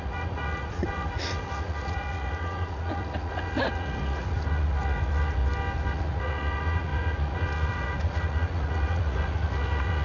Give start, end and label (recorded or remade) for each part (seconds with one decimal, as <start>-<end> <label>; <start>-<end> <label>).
0.0-5.4 remade; 5.4-5.9 recorded; 5.9-10.0 remade